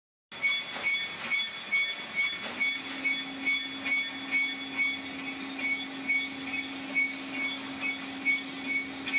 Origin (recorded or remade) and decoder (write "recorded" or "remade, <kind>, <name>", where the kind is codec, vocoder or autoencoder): recorded